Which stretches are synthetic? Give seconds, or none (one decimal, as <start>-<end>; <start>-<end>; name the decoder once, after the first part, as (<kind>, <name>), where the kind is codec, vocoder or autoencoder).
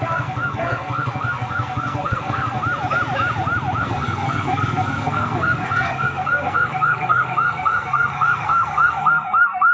0.0-2.6 (codec, SNAC); 3.8-9.7